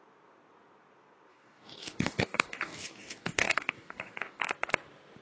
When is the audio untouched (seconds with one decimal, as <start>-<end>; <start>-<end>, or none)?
0.0-1.3; 4.4-5.2